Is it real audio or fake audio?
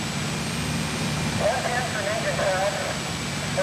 real